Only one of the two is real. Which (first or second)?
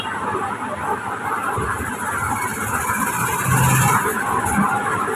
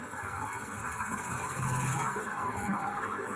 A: first